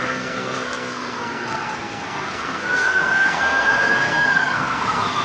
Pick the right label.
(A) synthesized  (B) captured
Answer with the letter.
A